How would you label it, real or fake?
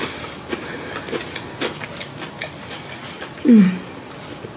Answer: real